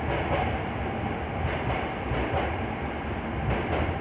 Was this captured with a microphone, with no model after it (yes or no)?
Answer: yes